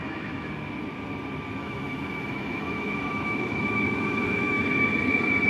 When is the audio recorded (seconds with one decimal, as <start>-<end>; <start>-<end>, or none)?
0.5-1.6; 4.7-5.5